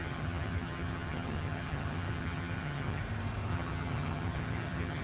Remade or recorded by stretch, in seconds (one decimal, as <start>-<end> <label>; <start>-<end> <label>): 0.0-3.0 remade; 3.0-3.5 recorded; 3.5-5.0 remade